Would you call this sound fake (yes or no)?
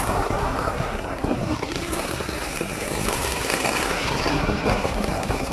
yes